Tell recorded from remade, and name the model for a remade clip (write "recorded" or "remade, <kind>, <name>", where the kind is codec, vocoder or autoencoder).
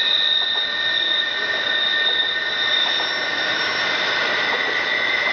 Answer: recorded